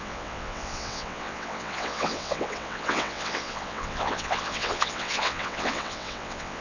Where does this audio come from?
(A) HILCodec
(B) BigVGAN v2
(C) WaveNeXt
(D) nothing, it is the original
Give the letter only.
C